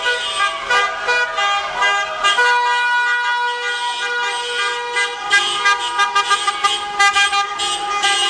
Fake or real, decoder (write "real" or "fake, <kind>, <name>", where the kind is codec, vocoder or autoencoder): real